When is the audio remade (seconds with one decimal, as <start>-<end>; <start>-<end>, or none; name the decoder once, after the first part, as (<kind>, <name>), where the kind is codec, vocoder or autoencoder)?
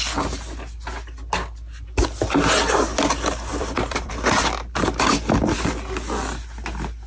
3.5-4.1 (vocoder, BigVGAN v2)